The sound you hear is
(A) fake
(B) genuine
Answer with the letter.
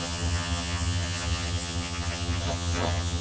A